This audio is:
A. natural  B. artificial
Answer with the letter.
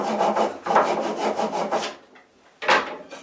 A